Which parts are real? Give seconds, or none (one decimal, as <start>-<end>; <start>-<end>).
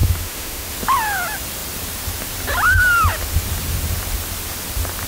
0.7-5.1